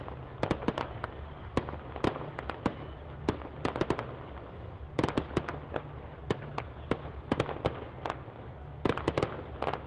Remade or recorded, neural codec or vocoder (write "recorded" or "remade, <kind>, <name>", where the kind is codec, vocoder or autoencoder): recorded